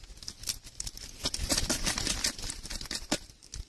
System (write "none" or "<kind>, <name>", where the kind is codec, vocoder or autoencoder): none